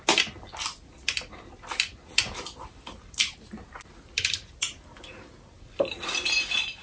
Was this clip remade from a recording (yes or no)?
no